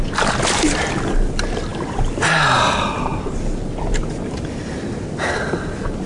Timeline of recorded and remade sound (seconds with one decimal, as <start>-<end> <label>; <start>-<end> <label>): 0.0-6.1 recorded

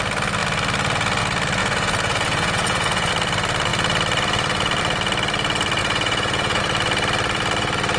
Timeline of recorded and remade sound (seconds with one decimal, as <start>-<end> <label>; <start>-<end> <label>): 0.0-1.6 recorded; 1.6-3.1 remade; 3.1-5.8 recorded; 5.8-6.6 remade; 6.6-8.0 recorded

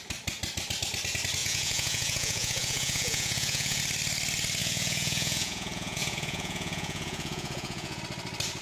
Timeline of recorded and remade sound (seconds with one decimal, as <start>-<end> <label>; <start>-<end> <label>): 0.0-1.4 recorded; 1.4-3.8 remade; 3.8-4.6 recorded; 4.6-8.0 remade; 8.0-8.6 recorded

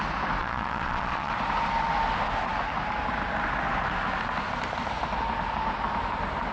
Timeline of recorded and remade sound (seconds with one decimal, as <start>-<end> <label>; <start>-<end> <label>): 0.0-0.4 recorded; 0.4-1.3 remade; 1.3-6.5 recorded

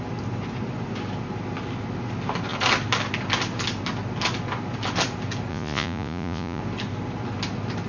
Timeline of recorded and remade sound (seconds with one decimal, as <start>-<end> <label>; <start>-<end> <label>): 0.0-5.5 recorded; 5.5-6.6 remade; 6.6-7.9 recorded

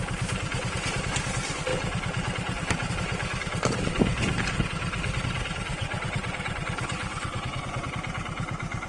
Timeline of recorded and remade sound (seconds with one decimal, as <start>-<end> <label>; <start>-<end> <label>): 0.0-5.7 recorded; 5.7-7.9 remade; 7.9-8.9 recorded

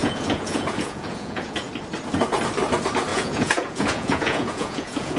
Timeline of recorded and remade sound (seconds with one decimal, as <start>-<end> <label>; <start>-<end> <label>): 0.0-1.7 remade; 1.7-3.1 recorded; 3.1-5.2 remade